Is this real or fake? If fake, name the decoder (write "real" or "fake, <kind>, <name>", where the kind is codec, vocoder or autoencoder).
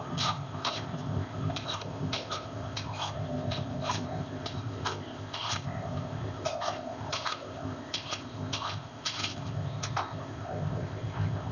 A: fake, codec, ZipCodec